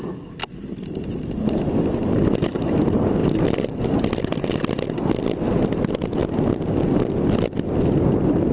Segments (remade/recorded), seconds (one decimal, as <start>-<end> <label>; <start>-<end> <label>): 0.0-8.5 recorded